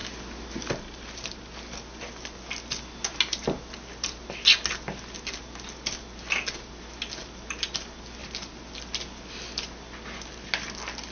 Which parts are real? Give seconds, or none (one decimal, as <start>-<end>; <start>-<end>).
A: 0.0-11.1